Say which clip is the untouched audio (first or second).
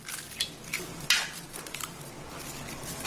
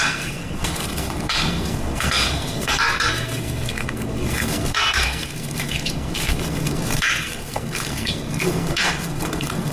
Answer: first